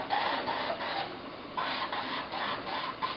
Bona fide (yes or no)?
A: yes